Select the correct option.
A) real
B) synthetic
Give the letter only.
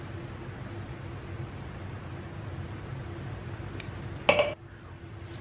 A